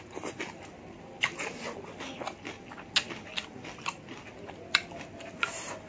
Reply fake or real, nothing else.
real